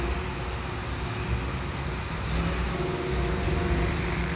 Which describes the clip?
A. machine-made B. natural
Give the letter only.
B